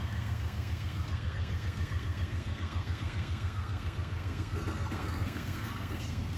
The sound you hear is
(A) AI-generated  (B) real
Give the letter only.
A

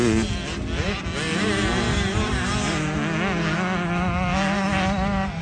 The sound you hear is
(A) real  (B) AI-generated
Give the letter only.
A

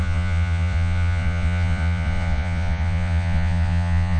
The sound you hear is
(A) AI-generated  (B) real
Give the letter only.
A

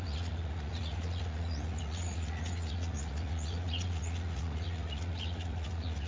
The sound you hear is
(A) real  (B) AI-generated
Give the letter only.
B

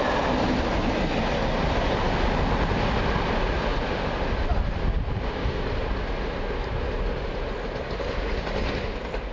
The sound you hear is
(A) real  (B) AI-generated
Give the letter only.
A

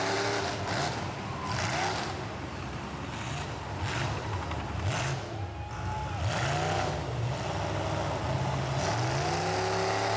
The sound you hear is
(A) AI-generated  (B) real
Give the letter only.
B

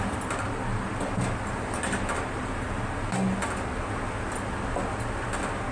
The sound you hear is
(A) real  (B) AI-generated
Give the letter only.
A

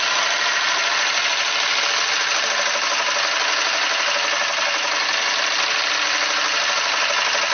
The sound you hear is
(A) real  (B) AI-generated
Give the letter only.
A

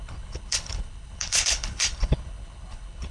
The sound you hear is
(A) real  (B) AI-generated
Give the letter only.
B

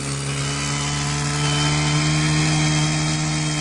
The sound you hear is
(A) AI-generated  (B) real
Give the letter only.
B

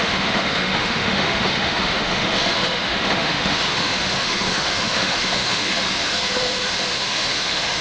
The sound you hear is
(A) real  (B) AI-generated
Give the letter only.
B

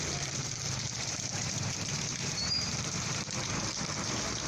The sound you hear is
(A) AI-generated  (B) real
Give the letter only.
A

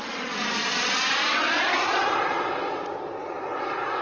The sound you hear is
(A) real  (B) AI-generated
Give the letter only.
A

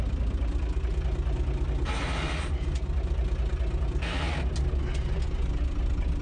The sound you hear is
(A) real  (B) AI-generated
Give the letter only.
A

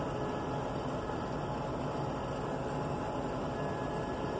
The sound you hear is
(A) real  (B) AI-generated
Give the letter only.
A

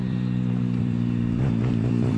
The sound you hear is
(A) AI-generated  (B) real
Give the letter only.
A